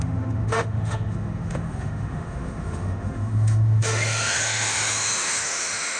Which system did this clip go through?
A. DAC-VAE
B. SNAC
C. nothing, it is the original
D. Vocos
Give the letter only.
A